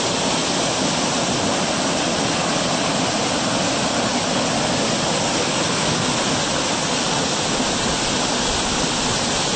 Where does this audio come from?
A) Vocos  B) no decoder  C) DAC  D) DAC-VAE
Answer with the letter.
B